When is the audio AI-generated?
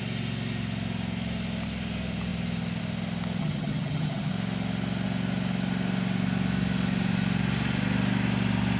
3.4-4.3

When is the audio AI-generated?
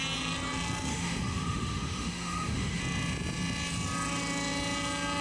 0.9-2.8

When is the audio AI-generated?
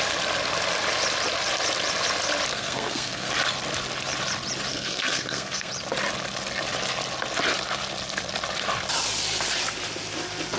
2.5-3.3; 4.7-5.7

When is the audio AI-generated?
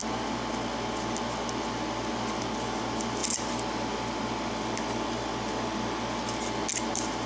none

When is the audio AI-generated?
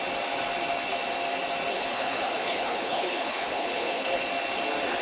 1.7-4.1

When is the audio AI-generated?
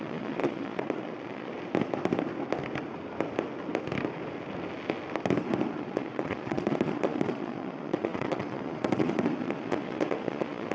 0.0-1.5; 5.7-10.7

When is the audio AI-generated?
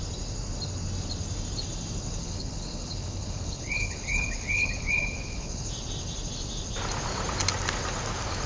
2.2-5.6